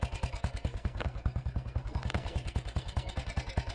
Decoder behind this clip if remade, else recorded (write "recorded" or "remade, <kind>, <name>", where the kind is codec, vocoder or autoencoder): remade, codec, SNAC